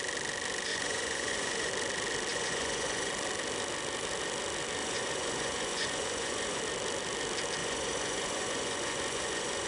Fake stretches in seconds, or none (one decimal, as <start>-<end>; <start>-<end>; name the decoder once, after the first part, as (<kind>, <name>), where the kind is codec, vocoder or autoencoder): 0.7-1.7 (vocoder, Vocos); 2.3-3.1; 4.8-6.6; 7.6-9.7